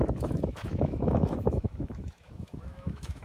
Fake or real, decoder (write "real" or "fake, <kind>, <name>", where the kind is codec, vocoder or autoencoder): fake, autoencoder, DAC-VAE